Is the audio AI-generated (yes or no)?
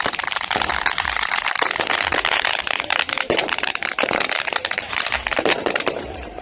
yes